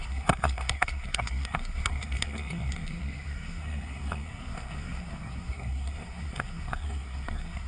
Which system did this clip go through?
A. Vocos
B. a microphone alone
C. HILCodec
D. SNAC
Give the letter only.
D